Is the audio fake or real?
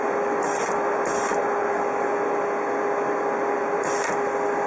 real